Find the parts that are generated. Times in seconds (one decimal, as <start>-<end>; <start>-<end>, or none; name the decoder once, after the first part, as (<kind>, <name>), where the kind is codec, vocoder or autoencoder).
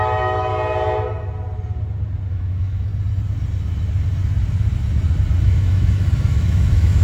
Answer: 0.0-0.5 (autoencoder, DAC-VAE); 2.3-2.9; 5.4-7.0